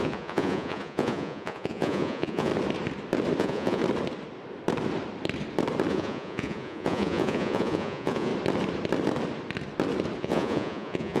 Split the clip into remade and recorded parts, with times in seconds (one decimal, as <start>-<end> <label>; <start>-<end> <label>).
0.0-2.5 remade; 2.5-3.4 recorded; 3.4-3.8 remade; 3.8-5.9 recorded; 5.9-8.3 remade; 8.3-10.2 recorded; 10.2-11.2 remade